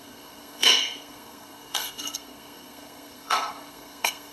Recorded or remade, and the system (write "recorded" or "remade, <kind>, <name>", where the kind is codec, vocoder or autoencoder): remade, codec, SNAC